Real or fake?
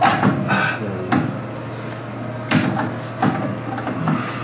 real